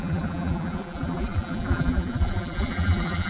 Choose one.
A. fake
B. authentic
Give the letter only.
A